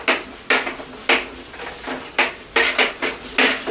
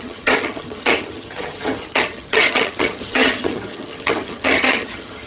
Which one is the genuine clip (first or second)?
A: first